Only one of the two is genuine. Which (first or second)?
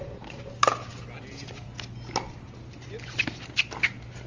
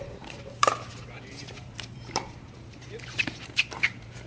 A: first